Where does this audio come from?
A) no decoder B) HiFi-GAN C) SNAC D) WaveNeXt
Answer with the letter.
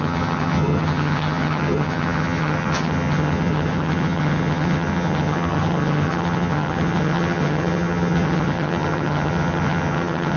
B